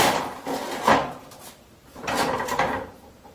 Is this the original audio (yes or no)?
no